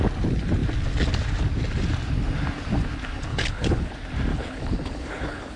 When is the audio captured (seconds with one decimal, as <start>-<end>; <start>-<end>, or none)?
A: 0.0-3.3; 3.9-4.3